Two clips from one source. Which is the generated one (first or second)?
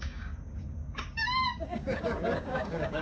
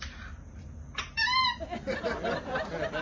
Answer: first